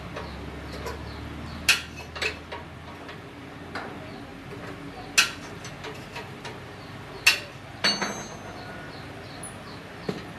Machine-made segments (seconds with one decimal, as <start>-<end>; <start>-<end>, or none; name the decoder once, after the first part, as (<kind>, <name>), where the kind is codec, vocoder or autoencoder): none